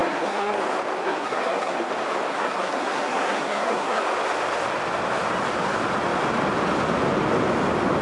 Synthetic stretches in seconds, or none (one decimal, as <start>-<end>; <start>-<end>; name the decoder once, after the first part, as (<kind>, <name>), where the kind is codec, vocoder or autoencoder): 0.0-0.6 (codec, SNAC); 1.0-1.9; 2.3-4.0